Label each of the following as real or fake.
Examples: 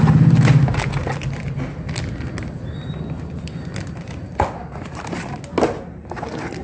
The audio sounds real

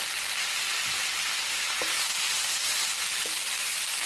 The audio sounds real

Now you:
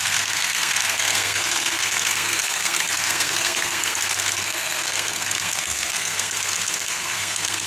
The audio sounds fake